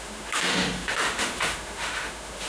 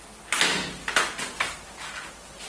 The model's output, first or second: first